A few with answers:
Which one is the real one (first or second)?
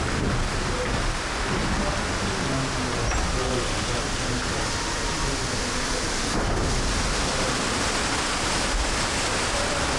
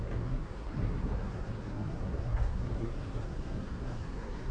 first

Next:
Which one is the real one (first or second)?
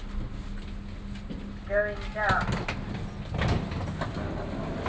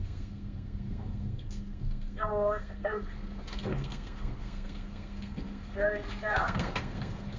first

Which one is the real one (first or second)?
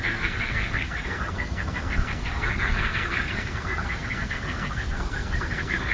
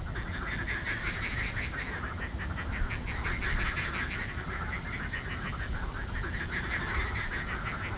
second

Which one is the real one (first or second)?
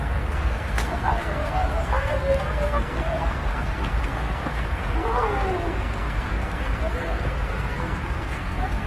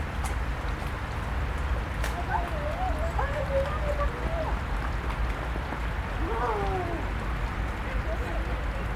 second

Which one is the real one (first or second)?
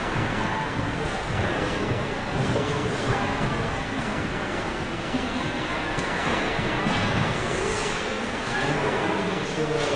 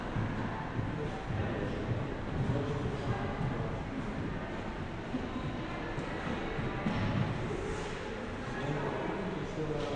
second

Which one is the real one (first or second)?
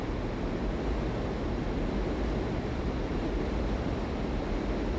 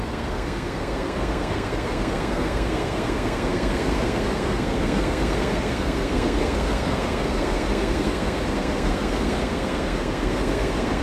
first